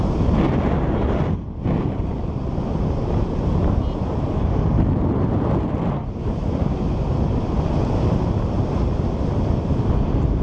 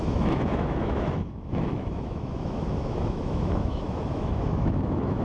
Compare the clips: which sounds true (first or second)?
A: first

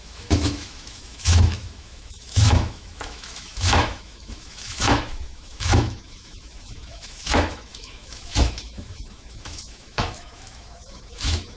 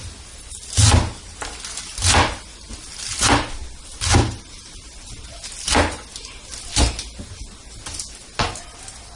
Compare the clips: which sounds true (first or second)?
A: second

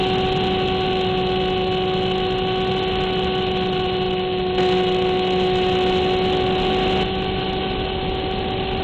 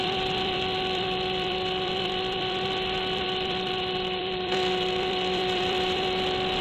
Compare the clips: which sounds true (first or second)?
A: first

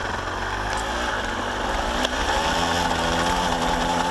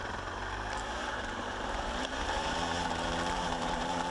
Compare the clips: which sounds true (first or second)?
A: first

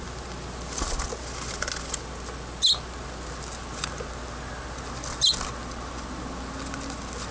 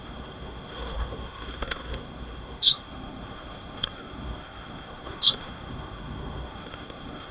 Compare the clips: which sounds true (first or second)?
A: first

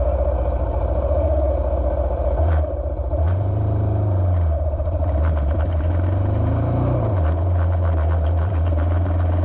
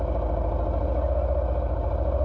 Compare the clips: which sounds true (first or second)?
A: second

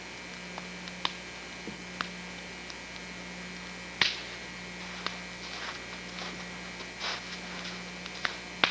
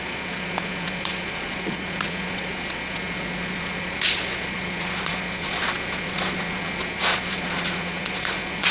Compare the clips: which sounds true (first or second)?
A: first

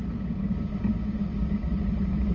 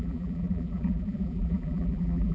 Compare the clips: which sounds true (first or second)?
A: first